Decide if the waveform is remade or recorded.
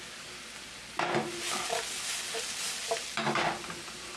recorded